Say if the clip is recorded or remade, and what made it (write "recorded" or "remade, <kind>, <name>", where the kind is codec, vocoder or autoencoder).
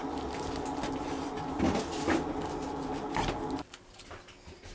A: recorded